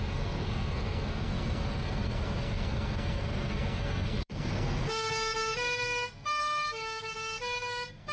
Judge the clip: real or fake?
fake